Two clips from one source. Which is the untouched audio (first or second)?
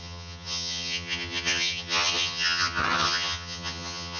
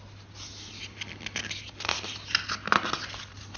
second